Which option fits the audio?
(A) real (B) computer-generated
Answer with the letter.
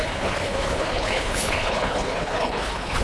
B